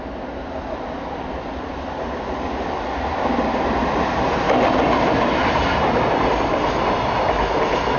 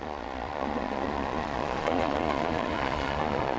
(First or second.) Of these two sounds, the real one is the first